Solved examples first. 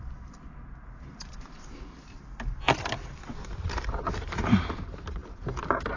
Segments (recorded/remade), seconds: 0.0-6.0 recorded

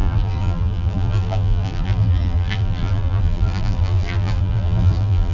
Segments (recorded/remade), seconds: 0.0-5.3 remade